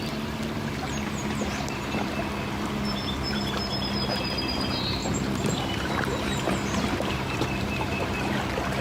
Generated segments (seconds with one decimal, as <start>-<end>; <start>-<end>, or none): 5.0-8.4